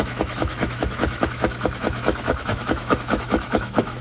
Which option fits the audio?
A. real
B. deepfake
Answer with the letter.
B